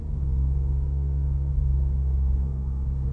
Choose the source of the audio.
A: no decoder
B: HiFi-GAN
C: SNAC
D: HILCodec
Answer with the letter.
C